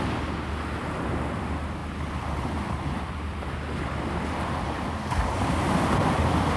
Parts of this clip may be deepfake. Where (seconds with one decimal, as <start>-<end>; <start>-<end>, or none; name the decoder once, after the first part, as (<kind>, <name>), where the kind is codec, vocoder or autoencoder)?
1.8-5.8 (vocoder, BigVGAN v2)